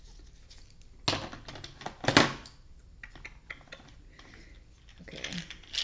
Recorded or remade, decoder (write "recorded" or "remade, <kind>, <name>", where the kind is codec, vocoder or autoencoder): recorded